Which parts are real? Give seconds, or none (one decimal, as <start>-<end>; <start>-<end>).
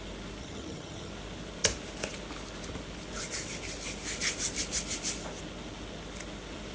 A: 0.0-0.4; 1.1-6.7